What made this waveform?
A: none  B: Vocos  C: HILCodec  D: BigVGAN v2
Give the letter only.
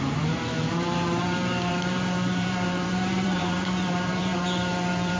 D